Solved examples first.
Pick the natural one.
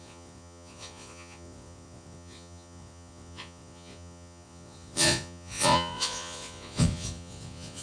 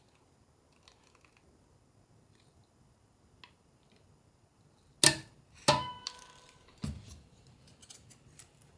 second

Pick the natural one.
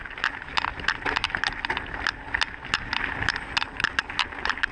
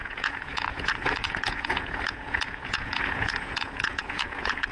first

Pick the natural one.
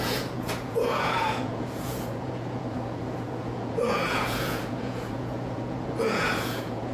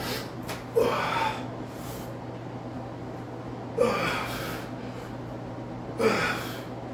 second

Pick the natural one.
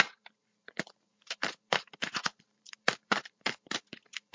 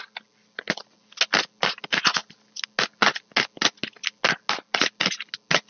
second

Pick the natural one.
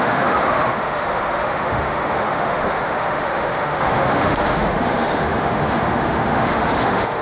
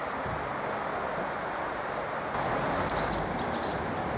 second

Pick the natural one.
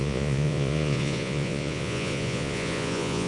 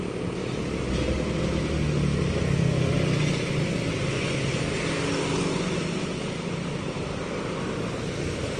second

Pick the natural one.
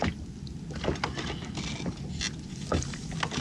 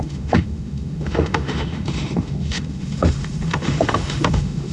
first